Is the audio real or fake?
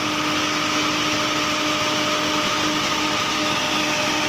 real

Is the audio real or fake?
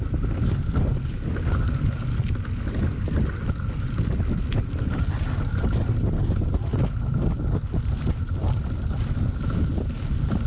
real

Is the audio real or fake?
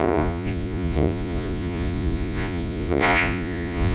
fake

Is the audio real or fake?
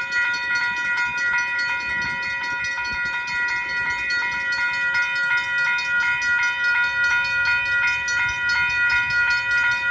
real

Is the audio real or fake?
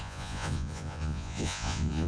fake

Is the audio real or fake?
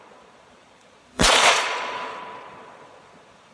fake